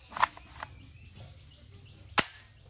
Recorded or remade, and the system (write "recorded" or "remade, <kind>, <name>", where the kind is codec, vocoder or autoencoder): recorded